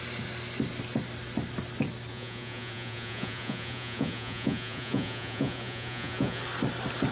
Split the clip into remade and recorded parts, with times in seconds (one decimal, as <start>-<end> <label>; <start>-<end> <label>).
0.0-2.1 recorded; 2.1-6.4 remade; 6.4-7.1 recorded